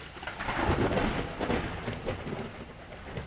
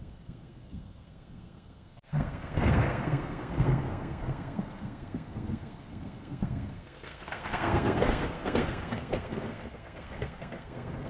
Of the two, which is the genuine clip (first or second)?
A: first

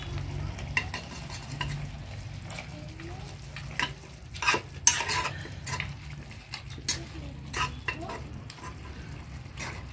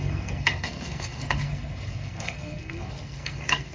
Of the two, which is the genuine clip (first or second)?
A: first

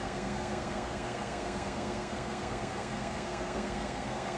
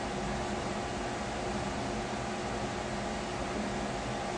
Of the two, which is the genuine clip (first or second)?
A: second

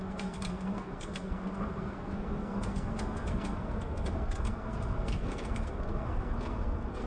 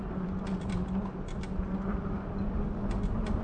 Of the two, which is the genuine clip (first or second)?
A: second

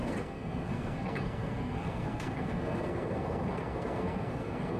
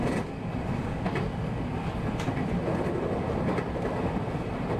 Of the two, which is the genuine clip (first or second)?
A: second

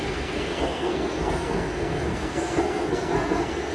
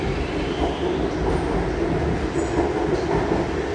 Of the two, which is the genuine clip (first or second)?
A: second